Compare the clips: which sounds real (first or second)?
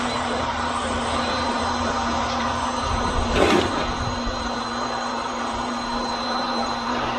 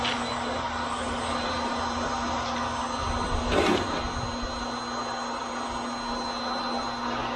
second